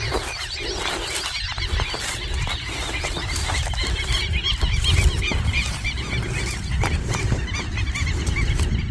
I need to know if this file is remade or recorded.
recorded